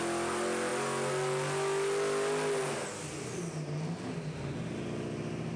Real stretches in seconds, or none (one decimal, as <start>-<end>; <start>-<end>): 0.0-5.6